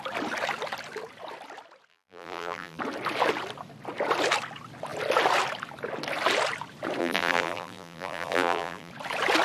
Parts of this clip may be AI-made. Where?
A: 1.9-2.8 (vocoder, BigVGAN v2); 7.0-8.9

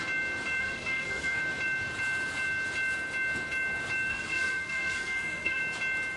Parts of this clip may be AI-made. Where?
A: 0.6-1.4 (codec, SNAC); 4.1-5.6

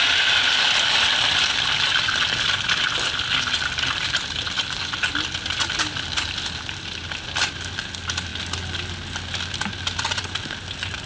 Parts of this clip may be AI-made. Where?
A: none

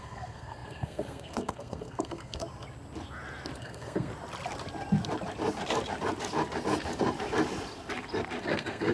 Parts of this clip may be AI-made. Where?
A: 0.0-2.4 (codec, SNAC); 3.6-4.1; 8.4-8.9

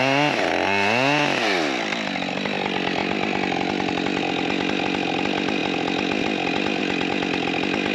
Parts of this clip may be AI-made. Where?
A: none

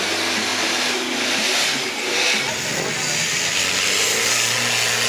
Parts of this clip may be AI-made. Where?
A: none

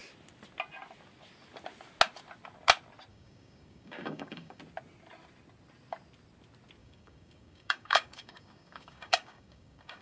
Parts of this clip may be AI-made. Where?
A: 3.1-4.6 (codec, DAC); 6.8-10.0

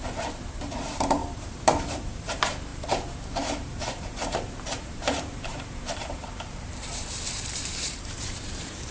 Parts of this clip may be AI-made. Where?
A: 0.0-1.2 (vocoder, BigVGAN v2); 1.8-8.9